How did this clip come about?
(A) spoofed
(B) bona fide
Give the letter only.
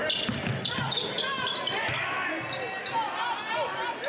B